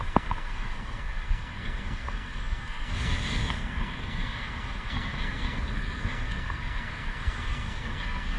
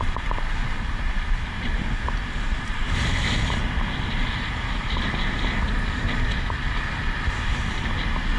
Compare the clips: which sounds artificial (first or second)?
first